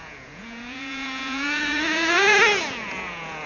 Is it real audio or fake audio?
fake